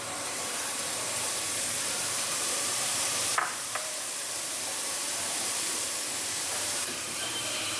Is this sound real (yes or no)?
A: no